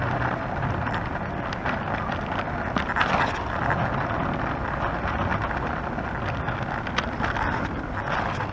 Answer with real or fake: real